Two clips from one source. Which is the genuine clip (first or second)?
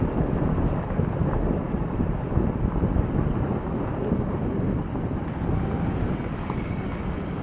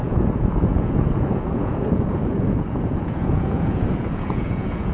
first